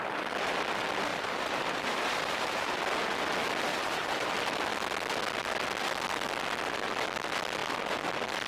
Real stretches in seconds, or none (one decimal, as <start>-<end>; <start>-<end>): 0.0-1.1; 2.8-3.7; 4.3-8.5